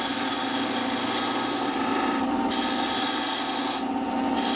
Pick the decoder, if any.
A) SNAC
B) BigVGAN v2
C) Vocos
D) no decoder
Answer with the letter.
D